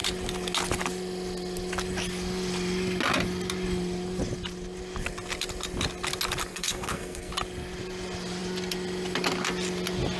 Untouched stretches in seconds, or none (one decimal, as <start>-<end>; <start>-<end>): 0.0-6.5; 7.3-10.2